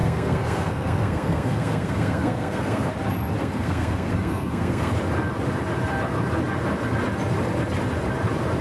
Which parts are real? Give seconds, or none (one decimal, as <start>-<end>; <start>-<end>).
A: 2.9-3.4; 4.9-8.6